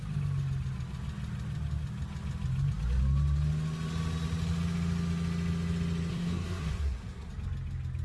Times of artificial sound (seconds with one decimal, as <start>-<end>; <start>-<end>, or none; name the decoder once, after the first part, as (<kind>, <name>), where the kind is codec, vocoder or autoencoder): 6.1-7.3 (codec, SNAC)